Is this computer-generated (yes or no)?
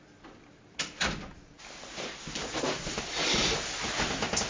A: no